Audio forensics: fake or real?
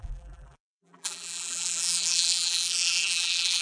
fake